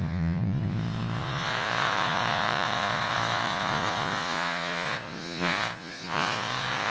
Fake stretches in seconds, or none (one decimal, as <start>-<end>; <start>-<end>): 0.0-6.9